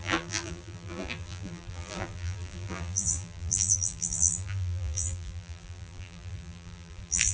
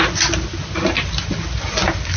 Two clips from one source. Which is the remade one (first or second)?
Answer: first